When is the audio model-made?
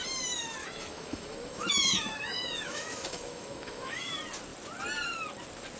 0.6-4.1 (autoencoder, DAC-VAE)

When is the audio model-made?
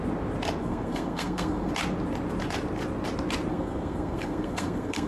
0.6-1.7 (codec, SNAC); 3.5-5.1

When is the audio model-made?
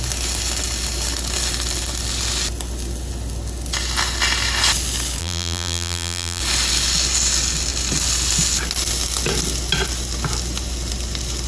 5.2-6.4 (vocoder, BigVGAN v2)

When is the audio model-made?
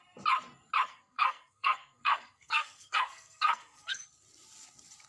0.9-4.0 (codec, SNAC)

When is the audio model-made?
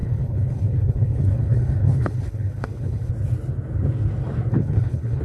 0.0-3.1 (codec, HILCodec); 4.5-5.2